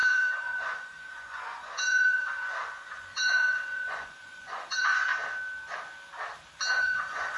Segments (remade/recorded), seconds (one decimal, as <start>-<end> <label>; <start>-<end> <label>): 0.0-5.1 remade; 5.1-6.7 recorded; 6.7-7.4 remade